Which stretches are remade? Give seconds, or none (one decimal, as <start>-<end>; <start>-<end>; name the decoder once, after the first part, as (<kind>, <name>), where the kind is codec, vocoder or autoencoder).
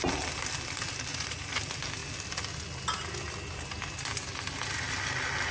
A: 1.1-1.6 (vocoder, Vocos)